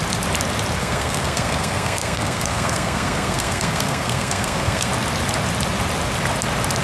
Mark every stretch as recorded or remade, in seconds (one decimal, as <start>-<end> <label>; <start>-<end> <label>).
0.0-0.8 recorded; 0.8-4.9 remade; 4.9-6.8 recorded